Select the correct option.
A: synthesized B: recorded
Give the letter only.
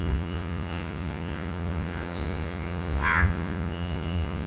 A